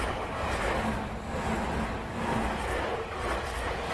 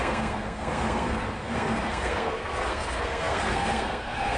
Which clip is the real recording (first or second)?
first